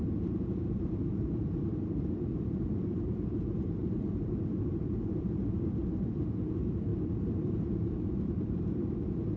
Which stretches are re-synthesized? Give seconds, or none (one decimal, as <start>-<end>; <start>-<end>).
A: 0.0-9.4